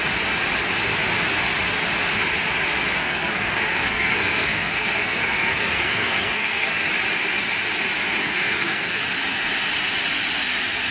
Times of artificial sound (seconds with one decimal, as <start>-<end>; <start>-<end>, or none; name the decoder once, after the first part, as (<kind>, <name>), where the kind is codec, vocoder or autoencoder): 3.0-6.9 (codec, SNAC); 8.2-9.0